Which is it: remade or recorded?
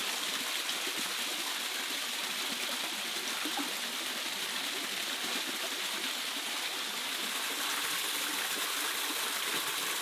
recorded